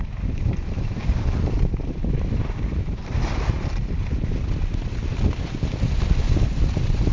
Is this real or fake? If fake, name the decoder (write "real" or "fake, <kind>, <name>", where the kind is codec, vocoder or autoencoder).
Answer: real